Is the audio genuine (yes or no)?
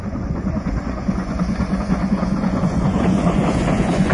no